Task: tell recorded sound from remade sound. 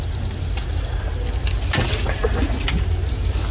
recorded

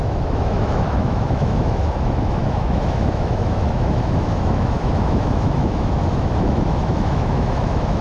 remade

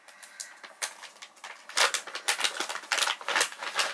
recorded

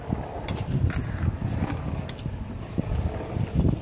recorded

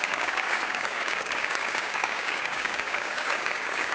remade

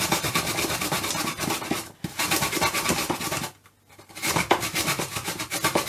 recorded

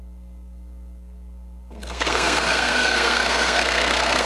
remade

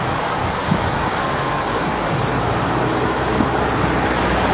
remade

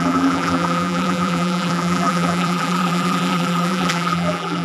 remade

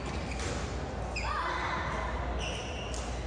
recorded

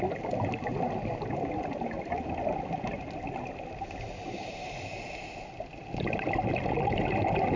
recorded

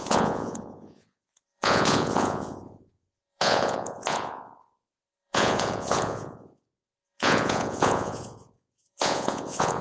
remade